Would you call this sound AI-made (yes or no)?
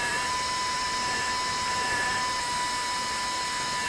no